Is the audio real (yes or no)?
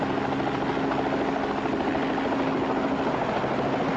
yes